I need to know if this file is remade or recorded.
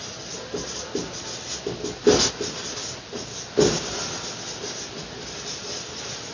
recorded